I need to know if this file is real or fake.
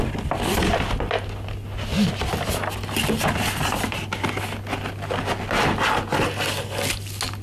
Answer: real